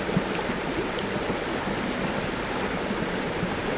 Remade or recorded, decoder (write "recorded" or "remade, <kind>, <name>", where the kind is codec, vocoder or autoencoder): recorded